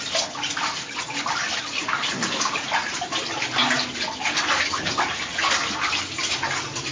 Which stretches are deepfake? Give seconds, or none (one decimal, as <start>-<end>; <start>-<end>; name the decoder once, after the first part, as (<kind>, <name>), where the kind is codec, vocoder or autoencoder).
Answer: none

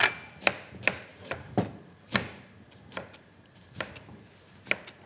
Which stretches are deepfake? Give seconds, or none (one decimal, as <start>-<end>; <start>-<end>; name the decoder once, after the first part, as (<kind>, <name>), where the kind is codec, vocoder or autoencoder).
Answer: 1.1-3.8 (vocoder, BigVGAN v2)

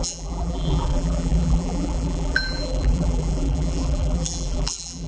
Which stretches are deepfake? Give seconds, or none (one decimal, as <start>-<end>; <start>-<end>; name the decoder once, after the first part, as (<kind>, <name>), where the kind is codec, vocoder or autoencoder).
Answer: 0.0-5.1 (vocoder, BigVGAN v2)

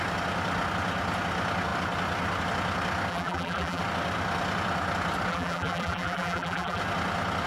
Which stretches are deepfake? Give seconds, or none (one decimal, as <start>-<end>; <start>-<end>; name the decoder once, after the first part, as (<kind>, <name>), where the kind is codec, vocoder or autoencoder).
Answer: 3.1-3.8 (vocoder, BigVGAN v2); 5.3-6.8

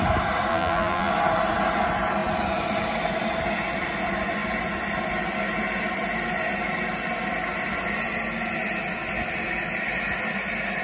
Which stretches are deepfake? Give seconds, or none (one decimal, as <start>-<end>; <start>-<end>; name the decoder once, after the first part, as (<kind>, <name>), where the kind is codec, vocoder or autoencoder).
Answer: 0.5-1.1 (vocoder, BigVGAN v2)